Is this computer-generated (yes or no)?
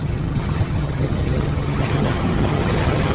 yes